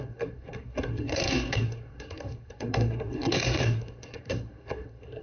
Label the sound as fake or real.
fake